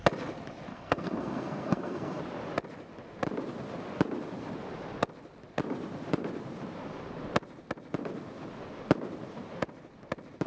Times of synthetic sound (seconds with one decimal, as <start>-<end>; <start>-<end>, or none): 0.7-2.2

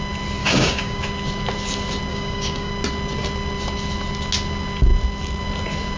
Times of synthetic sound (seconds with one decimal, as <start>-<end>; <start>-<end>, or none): 0.4-1.0; 2.1-2.7

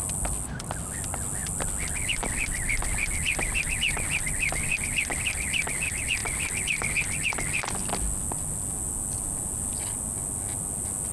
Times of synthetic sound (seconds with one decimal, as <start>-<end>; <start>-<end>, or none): none

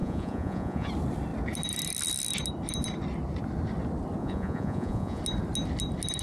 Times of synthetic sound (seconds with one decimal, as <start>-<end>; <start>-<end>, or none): 0.0-0.9; 4.2-5.2